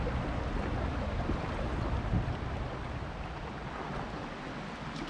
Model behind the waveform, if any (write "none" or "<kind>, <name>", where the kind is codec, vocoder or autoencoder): none